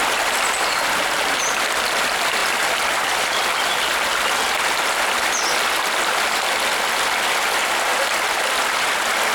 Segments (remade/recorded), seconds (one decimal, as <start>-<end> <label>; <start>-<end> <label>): 0.0-9.3 recorded